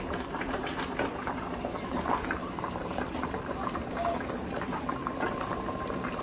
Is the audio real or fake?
fake